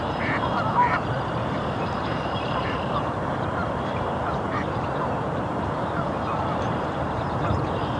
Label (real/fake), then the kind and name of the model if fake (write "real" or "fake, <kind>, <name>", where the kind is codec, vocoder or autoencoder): fake, vocoder, BigVGAN v2